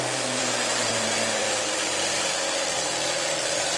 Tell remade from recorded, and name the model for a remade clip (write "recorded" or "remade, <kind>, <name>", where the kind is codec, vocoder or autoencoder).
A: remade, vocoder, BigVGAN v2